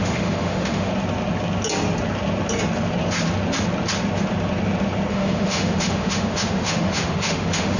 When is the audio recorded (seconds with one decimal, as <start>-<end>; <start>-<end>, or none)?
0.9-5.1